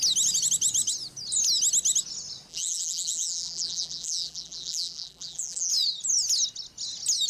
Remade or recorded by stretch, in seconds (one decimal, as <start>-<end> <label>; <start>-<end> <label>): 0.0-2.5 recorded; 2.5-5.7 remade; 5.7-7.3 recorded